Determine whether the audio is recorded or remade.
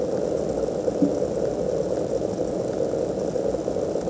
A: recorded